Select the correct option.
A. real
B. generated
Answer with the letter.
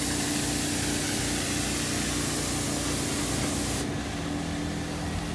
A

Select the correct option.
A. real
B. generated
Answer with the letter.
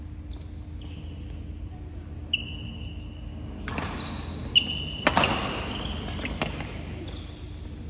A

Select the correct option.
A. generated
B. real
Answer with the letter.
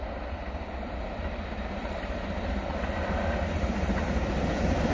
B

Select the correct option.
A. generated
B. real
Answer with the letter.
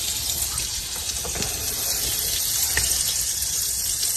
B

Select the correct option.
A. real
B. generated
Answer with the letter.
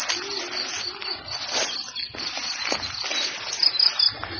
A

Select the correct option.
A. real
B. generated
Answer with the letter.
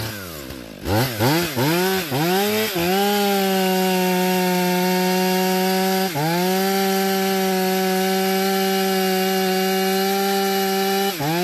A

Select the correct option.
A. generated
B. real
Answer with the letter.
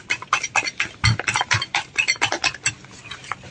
B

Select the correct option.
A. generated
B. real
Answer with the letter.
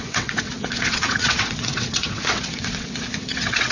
A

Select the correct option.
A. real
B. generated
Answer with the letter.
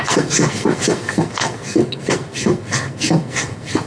B